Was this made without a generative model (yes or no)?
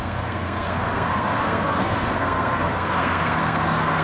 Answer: no